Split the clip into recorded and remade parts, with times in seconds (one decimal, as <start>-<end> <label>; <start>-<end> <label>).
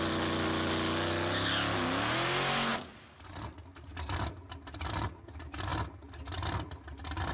0.0-7.3 recorded